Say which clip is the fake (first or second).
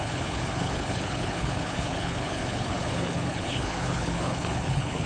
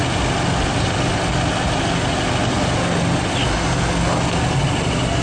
first